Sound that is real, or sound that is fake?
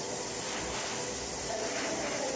fake